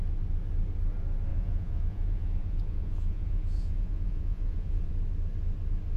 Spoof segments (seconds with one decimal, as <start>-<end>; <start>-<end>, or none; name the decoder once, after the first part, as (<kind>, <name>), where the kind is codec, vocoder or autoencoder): 1.3-4.9 (vocoder, Vocos)